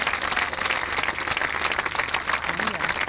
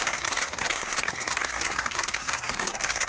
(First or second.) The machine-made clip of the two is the second